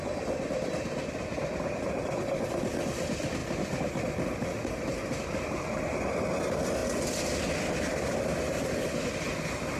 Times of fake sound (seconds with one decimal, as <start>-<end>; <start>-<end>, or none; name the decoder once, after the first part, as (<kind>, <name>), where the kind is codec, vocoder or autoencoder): none